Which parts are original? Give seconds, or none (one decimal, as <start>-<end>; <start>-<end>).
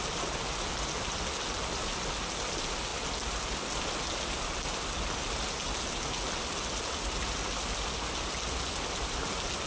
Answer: 0.0-9.7